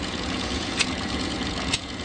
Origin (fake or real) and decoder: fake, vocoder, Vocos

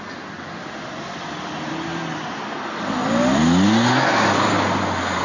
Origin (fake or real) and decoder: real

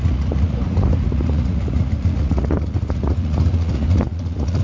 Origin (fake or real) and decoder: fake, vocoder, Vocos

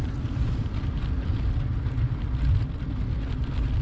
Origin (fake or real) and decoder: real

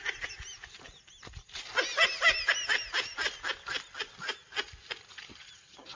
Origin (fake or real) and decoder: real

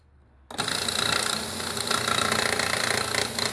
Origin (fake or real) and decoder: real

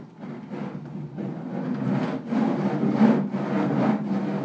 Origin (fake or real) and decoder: real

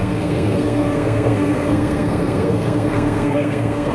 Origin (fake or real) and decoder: fake, codec, SNAC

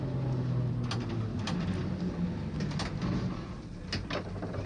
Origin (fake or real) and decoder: real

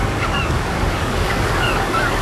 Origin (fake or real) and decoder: fake, codec, DAC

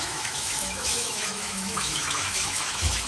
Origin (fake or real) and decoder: fake, autoencoder, DAC-VAE